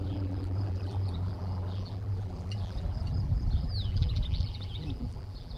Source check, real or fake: fake